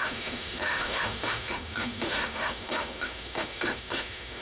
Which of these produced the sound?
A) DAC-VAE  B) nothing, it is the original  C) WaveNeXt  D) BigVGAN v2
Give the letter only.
A